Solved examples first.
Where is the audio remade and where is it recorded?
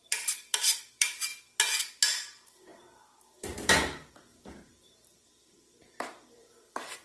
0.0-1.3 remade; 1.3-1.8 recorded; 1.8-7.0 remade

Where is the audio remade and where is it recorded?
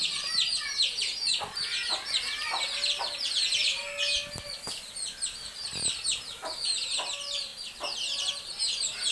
0.0-9.1 recorded